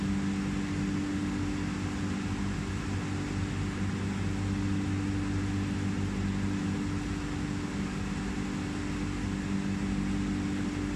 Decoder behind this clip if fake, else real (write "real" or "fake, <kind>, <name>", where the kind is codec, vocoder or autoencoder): real